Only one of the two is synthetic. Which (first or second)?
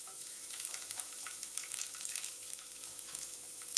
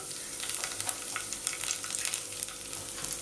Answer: first